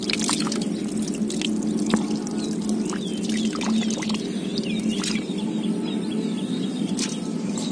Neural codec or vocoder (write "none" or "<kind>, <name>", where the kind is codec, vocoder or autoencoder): none